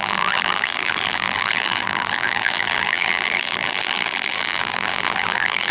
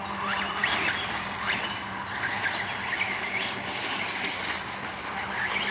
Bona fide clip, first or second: second